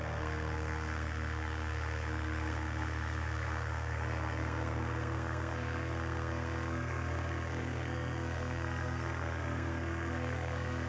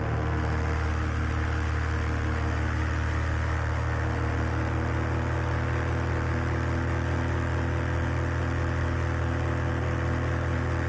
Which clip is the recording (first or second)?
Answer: second